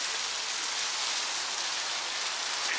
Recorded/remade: recorded